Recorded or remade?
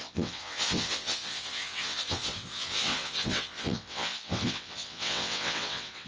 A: remade